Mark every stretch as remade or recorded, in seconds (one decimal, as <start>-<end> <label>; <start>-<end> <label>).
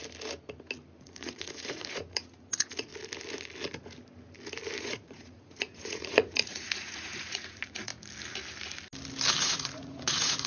0.0-1.0 recorded; 1.0-2.9 remade; 2.9-4.8 recorded; 4.8-7.9 remade; 7.9-9.4 recorded; 9.4-10.5 remade